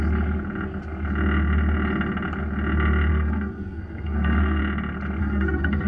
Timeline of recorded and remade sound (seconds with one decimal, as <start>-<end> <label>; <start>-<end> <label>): 0.0-3.1 recorded; 3.1-4.6 remade; 4.6-5.2 recorded; 5.2-5.9 remade